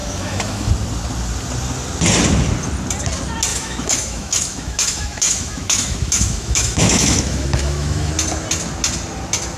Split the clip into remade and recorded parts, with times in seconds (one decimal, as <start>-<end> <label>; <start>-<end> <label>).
0.0-0.7 remade; 0.7-3.5 recorded; 3.5-8.1 remade; 8.1-9.6 recorded